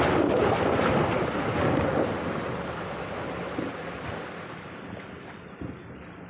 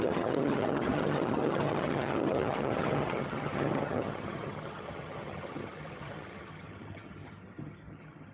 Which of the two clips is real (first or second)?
first